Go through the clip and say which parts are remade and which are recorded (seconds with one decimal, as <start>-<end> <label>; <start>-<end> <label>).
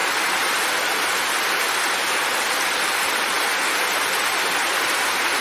0.0-5.4 recorded